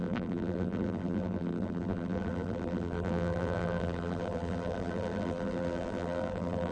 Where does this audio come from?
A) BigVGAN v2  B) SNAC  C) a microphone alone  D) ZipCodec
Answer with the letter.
A